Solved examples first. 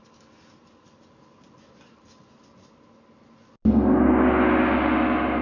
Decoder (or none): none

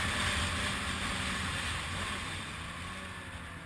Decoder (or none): none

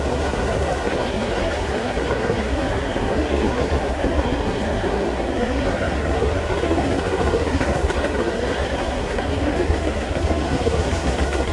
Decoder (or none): codec, SNAC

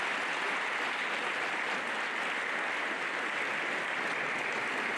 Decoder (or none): none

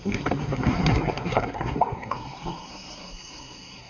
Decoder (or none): codec, SNAC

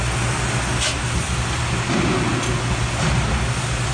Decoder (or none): none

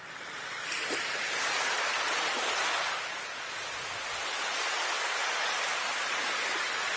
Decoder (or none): none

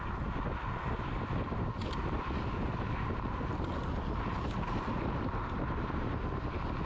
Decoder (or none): none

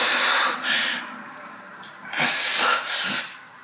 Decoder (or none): vocoder, BigVGAN v2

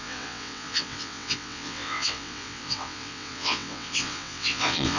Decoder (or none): vocoder, WaveNeXt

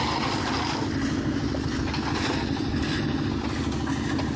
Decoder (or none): none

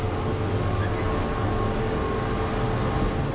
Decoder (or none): none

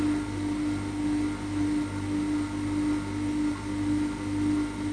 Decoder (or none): none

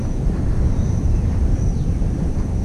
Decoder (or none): vocoder, BigVGAN v2